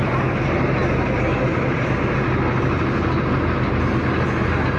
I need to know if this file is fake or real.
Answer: real